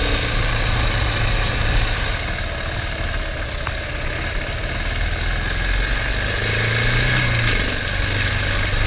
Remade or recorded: recorded